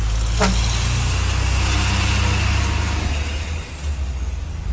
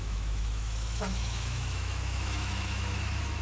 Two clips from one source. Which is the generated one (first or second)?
second